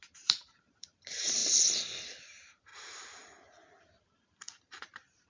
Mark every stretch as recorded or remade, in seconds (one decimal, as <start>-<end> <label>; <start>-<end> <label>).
0.0-1.4 remade; 1.4-2.2 recorded; 2.2-5.3 remade